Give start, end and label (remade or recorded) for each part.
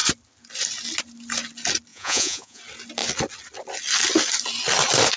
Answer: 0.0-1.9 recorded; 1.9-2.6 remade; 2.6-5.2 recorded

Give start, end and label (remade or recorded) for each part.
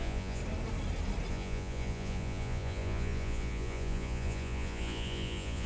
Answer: 0.0-0.4 remade; 0.4-1.3 recorded; 1.3-5.7 remade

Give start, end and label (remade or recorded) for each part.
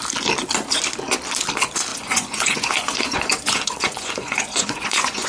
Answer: 0.0-1.9 recorded; 1.9-5.3 remade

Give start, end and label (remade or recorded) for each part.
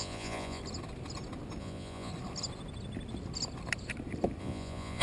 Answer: 0.0-0.6 remade; 0.6-1.6 recorded; 1.6-2.1 remade; 2.1-4.4 recorded; 4.4-5.0 remade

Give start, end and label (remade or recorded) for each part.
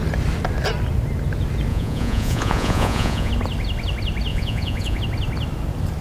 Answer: 0.0-1.7 recorded; 1.7-3.3 remade; 3.3-4.3 recorded; 4.3-5.0 remade; 5.0-6.0 recorded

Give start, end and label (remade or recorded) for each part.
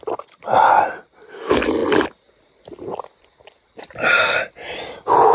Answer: 0.0-5.3 recorded